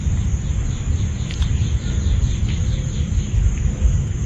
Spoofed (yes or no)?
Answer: no